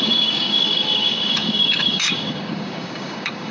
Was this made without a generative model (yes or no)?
no